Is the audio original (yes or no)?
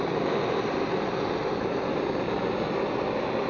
yes